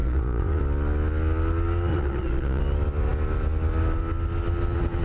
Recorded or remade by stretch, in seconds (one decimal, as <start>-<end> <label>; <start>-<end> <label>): 0.0-0.6 remade; 0.6-1.9 recorded; 1.9-2.6 remade; 2.6-5.0 recorded